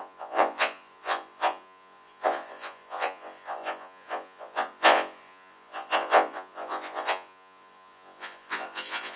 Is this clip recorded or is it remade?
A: remade